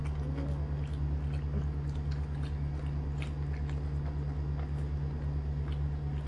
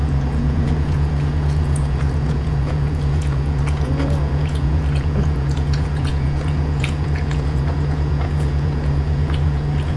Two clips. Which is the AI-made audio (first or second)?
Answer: second